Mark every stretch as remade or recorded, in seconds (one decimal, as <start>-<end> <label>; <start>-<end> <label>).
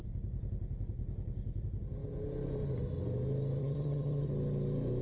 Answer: 0.0-3.6 recorded; 3.6-4.3 remade; 4.3-5.0 recorded